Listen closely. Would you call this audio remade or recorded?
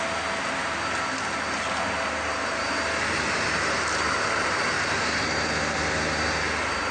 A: recorded